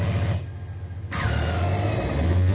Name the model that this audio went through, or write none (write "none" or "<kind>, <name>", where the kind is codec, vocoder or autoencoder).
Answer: none